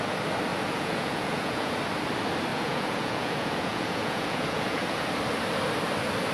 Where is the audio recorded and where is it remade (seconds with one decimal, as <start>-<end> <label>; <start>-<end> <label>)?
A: 0.0-0.5 recorded; 0.5-1.8 remade; 1.8-2.5 recorded; 2.5-5.1 remade; 5.1-6.3 recorded